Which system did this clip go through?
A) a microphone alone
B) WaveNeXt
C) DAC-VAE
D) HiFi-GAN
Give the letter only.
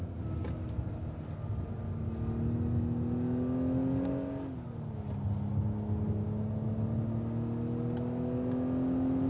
A